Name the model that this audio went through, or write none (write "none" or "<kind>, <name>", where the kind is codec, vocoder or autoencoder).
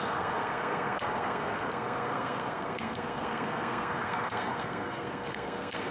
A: codec, SNAC